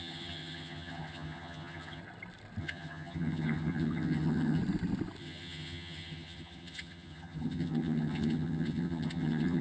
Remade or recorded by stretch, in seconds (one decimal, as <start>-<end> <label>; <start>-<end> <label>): 0.0-2.0 remade; 2.0-2.6 recorded; 2.6-4.6 remade; 4.6-5.2 recorded; 5.2-9.6 remade